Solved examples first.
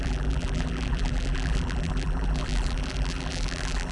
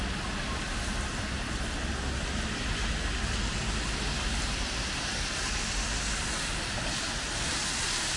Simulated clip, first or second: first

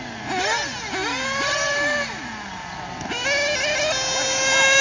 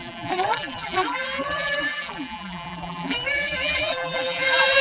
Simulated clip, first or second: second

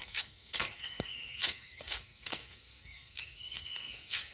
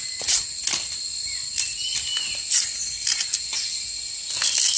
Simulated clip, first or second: first